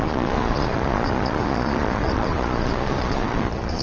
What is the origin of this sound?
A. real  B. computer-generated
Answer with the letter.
B